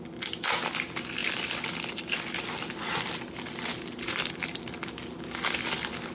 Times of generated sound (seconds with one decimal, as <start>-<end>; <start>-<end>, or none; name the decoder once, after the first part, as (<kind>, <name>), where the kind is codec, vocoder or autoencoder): none